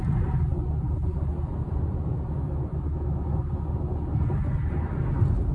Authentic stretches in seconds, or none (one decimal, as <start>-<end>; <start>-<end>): 0.0-2.7; 3.5-5.5